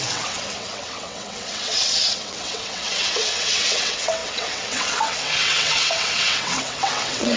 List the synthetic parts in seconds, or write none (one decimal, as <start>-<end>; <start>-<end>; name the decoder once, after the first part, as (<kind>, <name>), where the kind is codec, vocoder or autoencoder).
0.0-7.4 (vocoder, WaveNeXt)